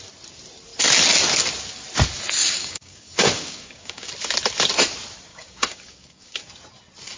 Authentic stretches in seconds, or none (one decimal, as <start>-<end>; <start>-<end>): 0.0-2.4; 4.1-5.3; 6.5-7.2